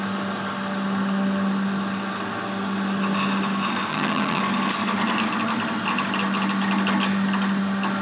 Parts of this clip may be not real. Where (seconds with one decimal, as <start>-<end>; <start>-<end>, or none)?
3.9-4.4